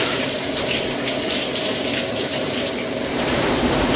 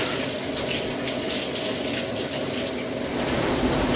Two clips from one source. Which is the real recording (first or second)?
second